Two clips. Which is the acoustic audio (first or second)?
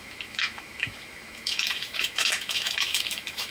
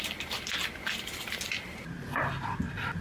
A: second